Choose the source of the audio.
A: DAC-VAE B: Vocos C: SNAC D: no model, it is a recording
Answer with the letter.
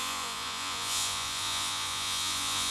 B